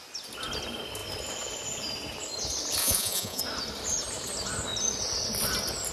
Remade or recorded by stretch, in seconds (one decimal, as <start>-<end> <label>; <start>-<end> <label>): 0.0-2.8 recorded; 2.8-3.4 remade; 3.4-5.9 recorded